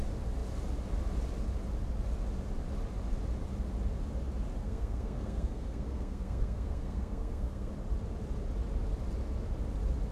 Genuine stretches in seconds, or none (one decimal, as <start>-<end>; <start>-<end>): 0.0-4.6; 7.7-10.1